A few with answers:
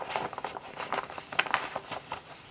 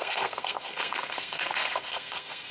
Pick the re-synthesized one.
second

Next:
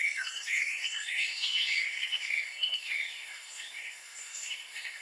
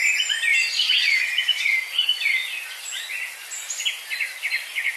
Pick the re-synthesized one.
first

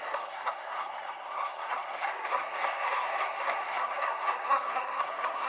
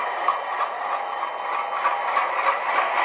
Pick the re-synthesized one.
first